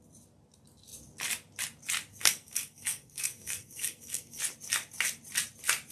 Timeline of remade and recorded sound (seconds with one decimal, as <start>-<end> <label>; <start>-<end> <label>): 0.0-2.1 recorded; 2.1-4.4 remade; 4.4-5.9 recorded